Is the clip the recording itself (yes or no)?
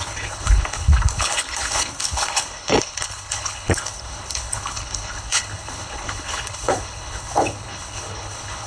no